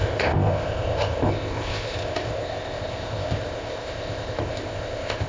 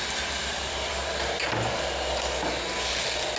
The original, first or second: second